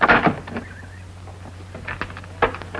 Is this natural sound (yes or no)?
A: yes